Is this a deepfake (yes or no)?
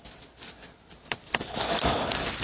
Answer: no